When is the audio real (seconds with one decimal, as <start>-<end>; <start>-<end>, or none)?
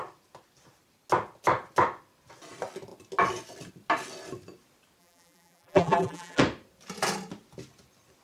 0.0-5.0; 6.4-8.2